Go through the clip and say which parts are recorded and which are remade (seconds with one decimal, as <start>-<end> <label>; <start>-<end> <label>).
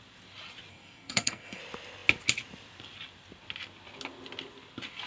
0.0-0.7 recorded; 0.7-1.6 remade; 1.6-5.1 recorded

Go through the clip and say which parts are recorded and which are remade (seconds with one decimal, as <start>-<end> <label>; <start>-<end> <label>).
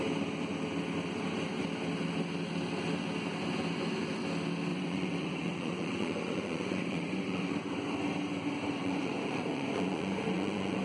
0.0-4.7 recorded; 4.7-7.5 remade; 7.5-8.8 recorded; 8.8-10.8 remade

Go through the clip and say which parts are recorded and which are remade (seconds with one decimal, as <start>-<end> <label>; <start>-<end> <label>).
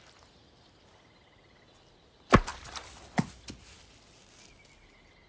0.0-5.3 recorded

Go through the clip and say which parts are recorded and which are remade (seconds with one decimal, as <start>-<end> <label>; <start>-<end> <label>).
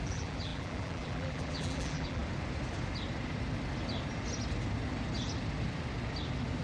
0.0-2.2 remade; 2.2-6.6 recorded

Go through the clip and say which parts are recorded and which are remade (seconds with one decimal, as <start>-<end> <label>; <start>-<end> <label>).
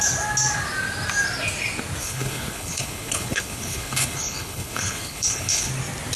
0.0-2.0 recorded; 2.0-5.7 remade; 5.7-6.2 recorded